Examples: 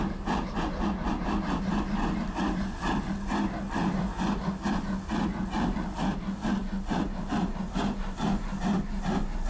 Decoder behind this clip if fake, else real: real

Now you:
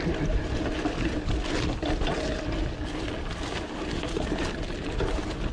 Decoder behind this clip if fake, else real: real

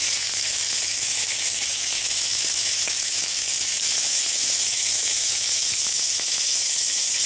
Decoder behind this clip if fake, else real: fake, autoencoder, DAC-VAE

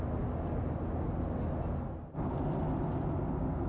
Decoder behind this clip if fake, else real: real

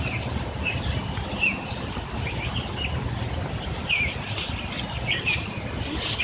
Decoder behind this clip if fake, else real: real